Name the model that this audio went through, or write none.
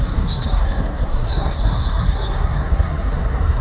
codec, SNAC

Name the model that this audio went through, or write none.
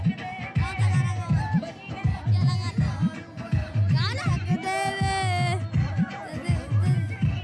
none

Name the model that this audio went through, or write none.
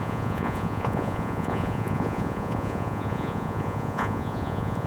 vocoder, Vocos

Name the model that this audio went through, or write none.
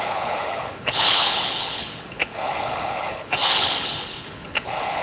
codec, HILCodec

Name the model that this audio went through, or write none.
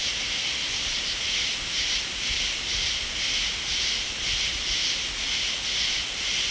none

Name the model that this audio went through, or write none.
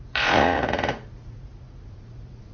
vocoder, Vocos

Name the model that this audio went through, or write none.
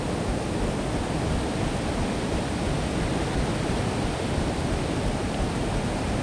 none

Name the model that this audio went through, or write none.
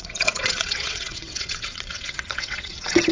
vocoder, WaveNeXt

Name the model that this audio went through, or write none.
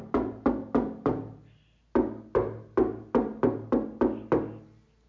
none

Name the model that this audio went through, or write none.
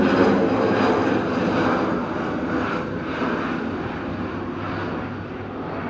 none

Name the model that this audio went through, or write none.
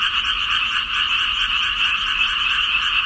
vocoder, BigVGAN v2